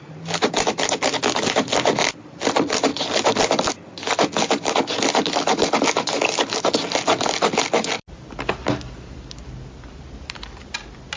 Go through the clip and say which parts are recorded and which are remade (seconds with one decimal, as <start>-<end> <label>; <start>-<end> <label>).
0.0-11.2 recorded